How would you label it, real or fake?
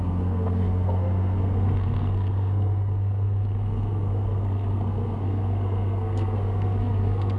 fake